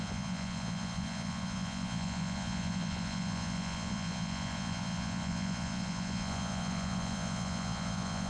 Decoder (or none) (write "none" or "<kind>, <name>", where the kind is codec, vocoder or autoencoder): vocoder, Vocos